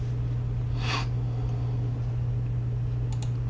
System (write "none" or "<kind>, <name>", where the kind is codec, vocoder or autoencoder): none